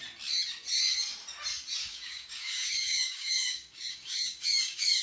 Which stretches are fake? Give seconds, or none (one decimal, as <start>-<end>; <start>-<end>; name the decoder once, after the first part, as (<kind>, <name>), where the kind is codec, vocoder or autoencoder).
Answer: 1.8-5.0 (codec, DAC)